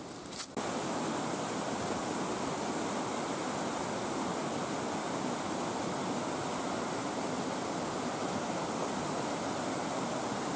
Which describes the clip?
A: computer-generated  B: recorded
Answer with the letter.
B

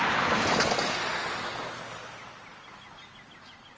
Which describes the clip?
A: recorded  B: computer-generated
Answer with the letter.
A